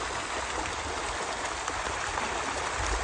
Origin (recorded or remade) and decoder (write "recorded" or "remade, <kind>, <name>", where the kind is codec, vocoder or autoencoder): recorded